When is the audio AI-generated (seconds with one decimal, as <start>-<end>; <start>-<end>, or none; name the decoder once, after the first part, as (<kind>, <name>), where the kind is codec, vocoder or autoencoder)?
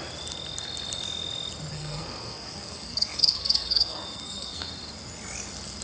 1.7-4.7 (codec, SNAC)